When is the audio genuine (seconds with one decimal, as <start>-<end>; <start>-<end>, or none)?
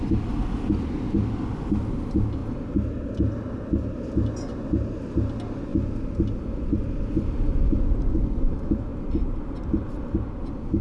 0.0-10.8